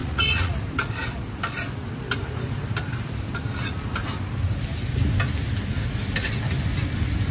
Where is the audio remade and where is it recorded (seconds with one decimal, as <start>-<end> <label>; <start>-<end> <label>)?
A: 0.0-0.6 remade; 0.6-7.3 recorded